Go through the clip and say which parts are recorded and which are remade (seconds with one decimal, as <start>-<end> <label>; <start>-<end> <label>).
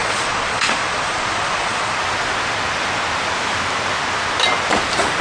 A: 0.0-2.0 remade; 2.0-5.2 recorded